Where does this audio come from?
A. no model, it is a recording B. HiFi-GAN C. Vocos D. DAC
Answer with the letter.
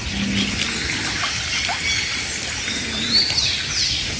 A